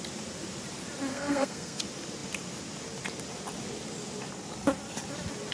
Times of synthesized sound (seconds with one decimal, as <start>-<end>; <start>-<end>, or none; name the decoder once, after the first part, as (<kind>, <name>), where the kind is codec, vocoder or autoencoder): 1.1-1.8 (codec, SNAC)